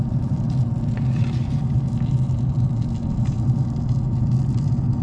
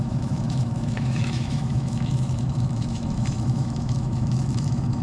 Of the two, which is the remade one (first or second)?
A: second